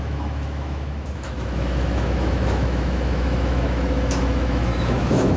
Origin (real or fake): fake